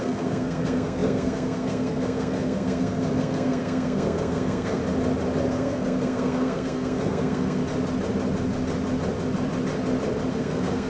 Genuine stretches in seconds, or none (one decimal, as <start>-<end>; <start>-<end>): 4.8-5.5; 7.6-10.3